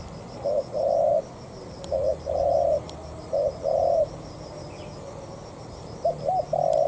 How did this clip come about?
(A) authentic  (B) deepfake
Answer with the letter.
A